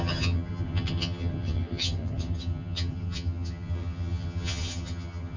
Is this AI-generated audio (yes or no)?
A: yes